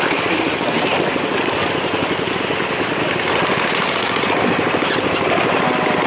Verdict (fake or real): real